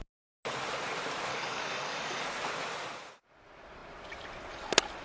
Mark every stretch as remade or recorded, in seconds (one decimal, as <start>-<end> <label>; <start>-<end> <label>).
0.0-1.3 recorded; 1.3-2.2 remade; 2.2-5.0 recorded